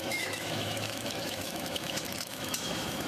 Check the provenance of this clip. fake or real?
fake